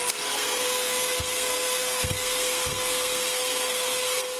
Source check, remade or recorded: remade